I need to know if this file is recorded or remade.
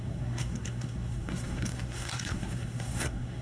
remade